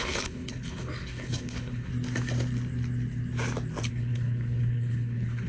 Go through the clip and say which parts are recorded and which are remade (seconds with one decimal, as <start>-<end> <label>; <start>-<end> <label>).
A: 0.0-1.9 remade; 1.9-3.9 recorded; 3.9-5.5 remade